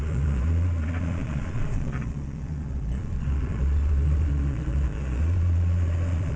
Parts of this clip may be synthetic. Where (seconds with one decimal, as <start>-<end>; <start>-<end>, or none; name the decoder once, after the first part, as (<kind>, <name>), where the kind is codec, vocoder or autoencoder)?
0.0-6.4 (vocoder, Vocos)